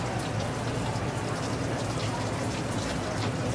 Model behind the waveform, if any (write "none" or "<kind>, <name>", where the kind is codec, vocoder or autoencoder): vocoder, BigVGAN v2